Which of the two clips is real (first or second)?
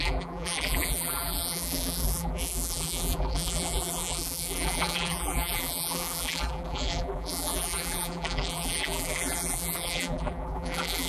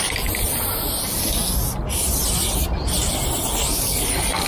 second